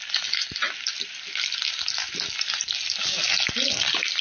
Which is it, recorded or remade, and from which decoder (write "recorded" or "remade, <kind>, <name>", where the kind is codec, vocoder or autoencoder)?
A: recorded